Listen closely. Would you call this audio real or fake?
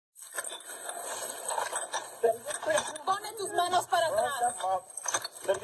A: real